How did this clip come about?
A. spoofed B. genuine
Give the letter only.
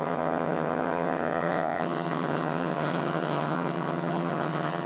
A